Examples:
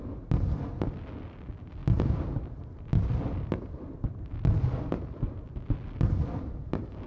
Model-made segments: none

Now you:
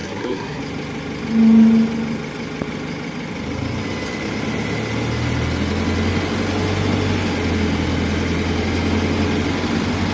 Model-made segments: 0.0-0.6 (codec, SNAC)

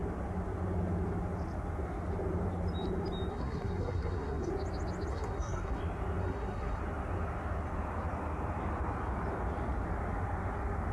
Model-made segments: 3.3-4.5 (codec, SNAC); 5.1-5.8; 6.2-6.8

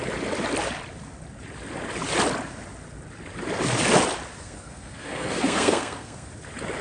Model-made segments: 4.4-6.3 (codec, SNAC)

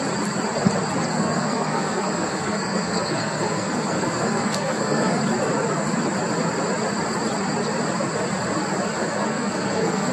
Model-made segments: 1.1-5.2 (codec, SNAC); 9.0-10.1

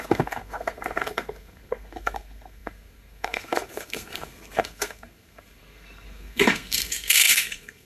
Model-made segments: 0.0-7.9 (codec, SNAC)

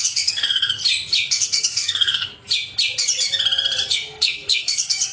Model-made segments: 0.0-0.8 (codec, SNAC); 1.3-2.3; 3.9-5.1